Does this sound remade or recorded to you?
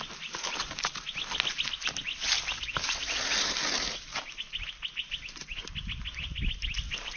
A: recorded